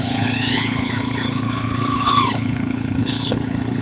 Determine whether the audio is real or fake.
fake